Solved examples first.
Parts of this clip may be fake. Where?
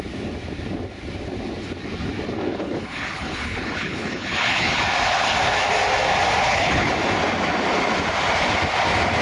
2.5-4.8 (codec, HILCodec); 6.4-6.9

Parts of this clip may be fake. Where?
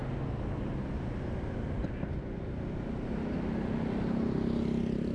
none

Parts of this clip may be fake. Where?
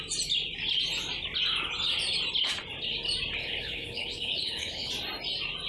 3.4-4.9 (codec, HILCodec)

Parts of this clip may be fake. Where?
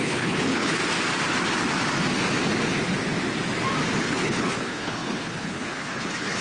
0.0-0.8 (codec, HILCodec); 4.0-6.4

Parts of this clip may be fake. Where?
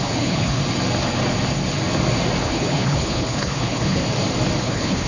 0.0-0.6 (codec, HILCodec); 2.4-4.0; 4.6-5.1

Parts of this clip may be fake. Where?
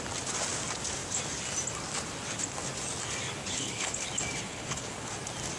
3.4-4.1 (codec, HILCodec); 4.5-5.1